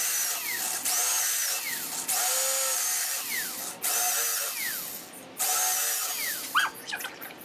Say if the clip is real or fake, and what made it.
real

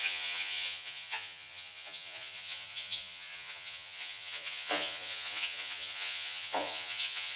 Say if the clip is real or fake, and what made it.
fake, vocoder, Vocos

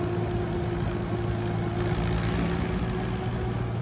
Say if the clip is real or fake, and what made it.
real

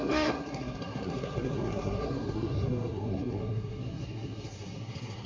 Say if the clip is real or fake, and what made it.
fake, codec, SNAC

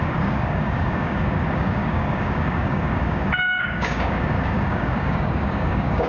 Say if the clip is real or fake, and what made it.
fake, codec, DAC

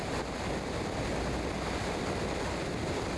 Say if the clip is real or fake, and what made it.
real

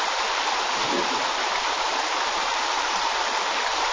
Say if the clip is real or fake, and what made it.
real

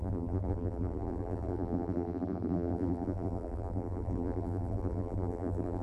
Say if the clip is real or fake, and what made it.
fake, vocoder, BigVGAN v2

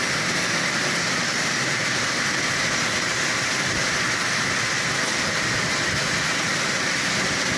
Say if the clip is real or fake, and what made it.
real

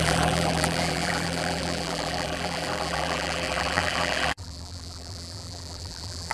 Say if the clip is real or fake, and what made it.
fake, vocoder, BigVGAN v2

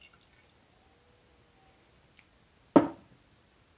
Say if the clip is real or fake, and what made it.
real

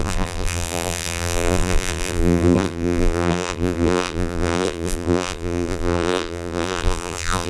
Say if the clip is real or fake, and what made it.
fake, vocoder, BigVGAN v2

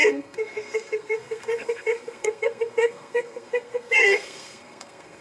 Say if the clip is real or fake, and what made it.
fake, codec, SNAC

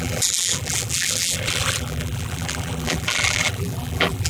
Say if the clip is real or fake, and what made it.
fake, vocoder, BigVGAN v2